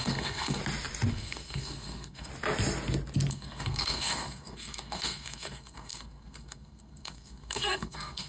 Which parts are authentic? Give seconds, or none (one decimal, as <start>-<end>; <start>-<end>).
0.6-1.1; 2.3-3.3